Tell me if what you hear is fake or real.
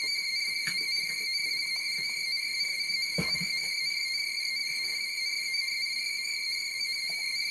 fake